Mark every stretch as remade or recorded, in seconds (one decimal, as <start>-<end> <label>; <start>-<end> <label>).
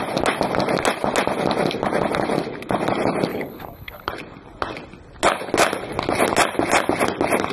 0.0-3.3 recorded; 3.3-4.1 remade; 4.1-7.5 recorded